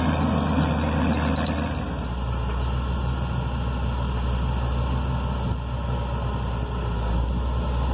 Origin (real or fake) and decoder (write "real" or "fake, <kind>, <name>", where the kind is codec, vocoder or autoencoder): real